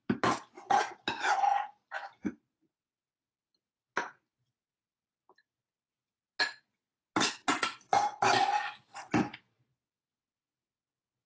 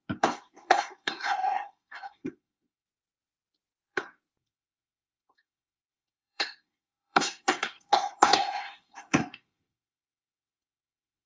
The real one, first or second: first